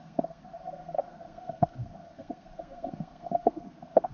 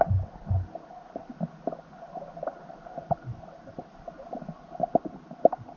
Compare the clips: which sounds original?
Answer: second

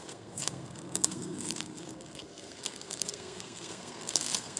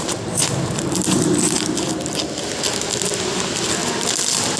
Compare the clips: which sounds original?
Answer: second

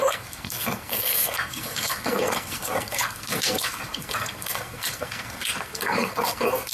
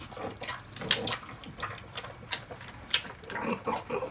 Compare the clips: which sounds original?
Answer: second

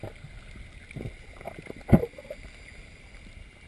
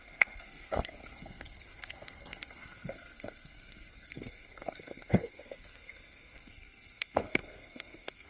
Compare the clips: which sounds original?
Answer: first